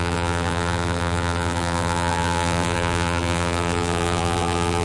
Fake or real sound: fake